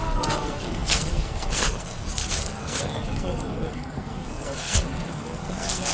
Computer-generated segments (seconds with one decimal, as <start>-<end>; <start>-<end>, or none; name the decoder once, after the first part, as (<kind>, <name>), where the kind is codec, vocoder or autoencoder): 0.0-5.9 (codec, SNAC)